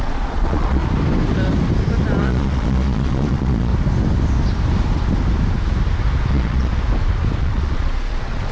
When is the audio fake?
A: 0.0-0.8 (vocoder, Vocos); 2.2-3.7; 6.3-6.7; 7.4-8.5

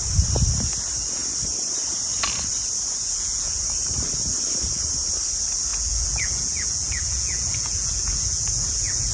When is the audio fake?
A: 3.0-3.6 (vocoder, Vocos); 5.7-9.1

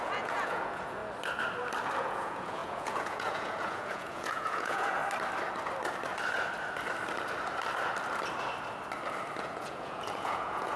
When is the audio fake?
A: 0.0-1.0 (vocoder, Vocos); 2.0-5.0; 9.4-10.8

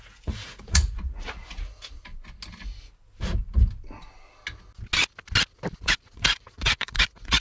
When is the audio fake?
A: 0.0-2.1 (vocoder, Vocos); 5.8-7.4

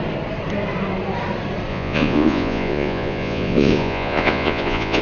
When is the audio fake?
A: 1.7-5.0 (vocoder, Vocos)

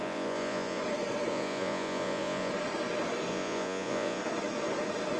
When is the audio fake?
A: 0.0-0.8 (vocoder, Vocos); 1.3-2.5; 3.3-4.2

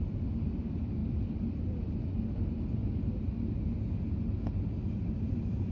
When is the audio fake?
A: none

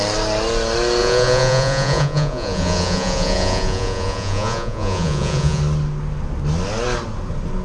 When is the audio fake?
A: 1.0-5.6 (vocoder, Vocos)